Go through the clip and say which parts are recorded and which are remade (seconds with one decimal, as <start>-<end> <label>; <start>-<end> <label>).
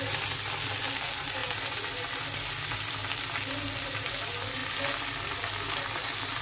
0.0-6.4 recorded